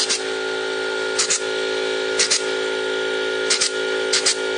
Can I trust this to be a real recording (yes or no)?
yes